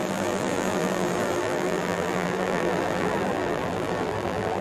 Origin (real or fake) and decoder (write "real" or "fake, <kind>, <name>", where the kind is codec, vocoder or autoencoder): fake, vocoder, BigVGAN v2